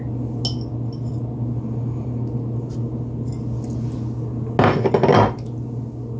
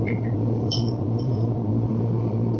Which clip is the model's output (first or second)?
second